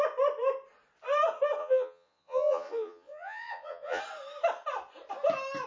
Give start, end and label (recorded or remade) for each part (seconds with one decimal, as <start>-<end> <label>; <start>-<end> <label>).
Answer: 0.0-1.6 recorded; 1.6-4.0 remade; 4.0-5.7 recorded